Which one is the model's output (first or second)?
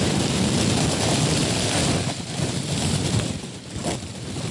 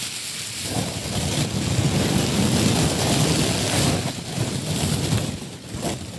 first